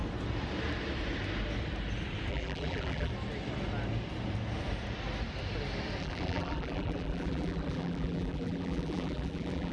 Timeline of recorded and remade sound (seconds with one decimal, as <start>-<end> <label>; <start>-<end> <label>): 0.0-2.3 recorded; 2.3-3.1 remade; 3.1-6.0 recorded; 6.0-9.7 remade